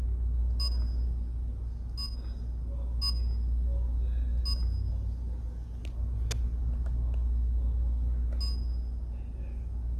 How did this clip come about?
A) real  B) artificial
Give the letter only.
A